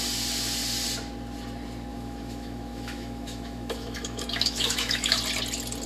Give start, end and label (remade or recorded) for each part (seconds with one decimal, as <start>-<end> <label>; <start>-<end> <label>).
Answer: 0.0-1.9 recorded; 1.9-5.2 remade; 5.2-5.9 recorded